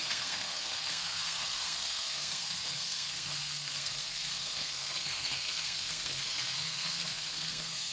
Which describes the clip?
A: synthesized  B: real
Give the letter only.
A